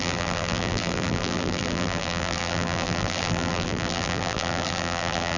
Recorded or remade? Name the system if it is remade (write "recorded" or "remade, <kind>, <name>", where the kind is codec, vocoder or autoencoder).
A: remade, vocoder, BigVGAN v2